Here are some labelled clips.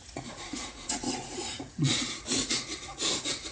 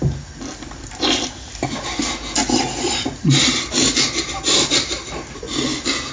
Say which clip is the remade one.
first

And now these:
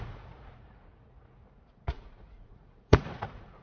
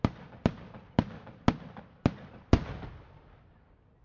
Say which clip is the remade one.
first